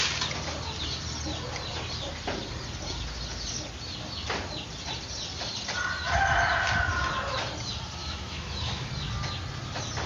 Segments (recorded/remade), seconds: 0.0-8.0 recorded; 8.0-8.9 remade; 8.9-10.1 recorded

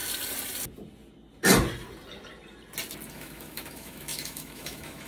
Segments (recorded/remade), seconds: 0.0-3.1 recorded; 3.1-5.1 remade

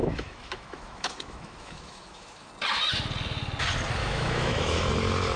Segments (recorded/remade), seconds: 0.0-2.5 remade; 2.5-4.0 recorded; 4.0-4.9 remade; 4.9-5.4 recorded